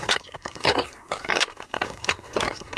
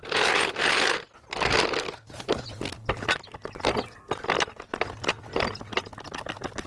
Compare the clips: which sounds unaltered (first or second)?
second